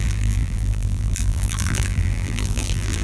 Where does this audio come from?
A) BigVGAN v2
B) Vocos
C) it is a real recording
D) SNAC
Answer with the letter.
A